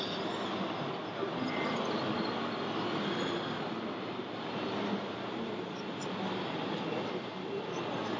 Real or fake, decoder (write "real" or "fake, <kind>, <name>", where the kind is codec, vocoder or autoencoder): real